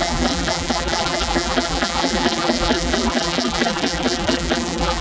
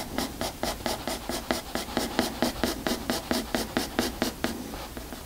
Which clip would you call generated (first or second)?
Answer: first